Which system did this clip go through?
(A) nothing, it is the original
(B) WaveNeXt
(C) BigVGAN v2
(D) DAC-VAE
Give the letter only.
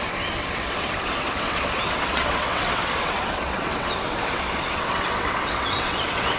B